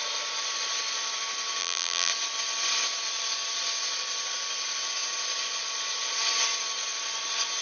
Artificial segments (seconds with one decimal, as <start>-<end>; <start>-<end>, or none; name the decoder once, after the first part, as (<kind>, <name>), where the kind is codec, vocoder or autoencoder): 1.6-2.1 (vocoder, BigVGAN v2)